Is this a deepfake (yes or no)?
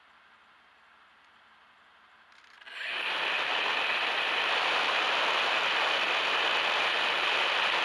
no